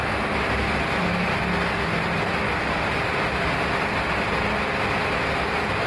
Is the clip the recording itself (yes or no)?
yes